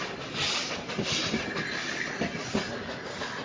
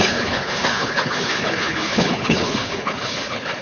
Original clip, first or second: first